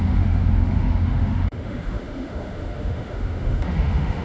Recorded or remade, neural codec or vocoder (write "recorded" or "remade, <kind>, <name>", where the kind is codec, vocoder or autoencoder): remade, autoencoder, DAC-VAE